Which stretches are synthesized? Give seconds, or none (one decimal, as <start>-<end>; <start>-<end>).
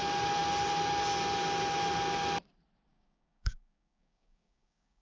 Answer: 2.9-5.0